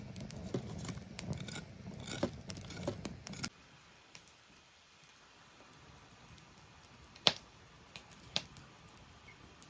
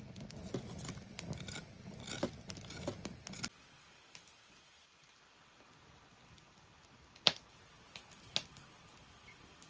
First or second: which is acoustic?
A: second